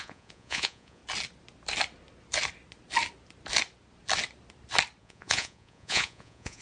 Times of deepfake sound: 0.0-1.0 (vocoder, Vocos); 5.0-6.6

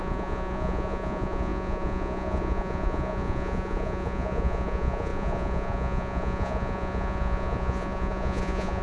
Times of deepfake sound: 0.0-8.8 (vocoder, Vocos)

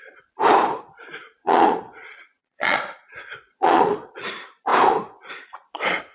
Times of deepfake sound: 1.4-2.8 (vocoder, Vocos); 3.3-4.1

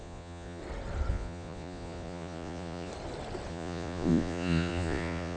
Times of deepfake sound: 0.0-0.6 (vocoder, Vocos); 1.1-2.9; 3.5-5.4